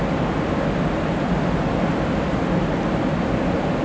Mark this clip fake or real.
real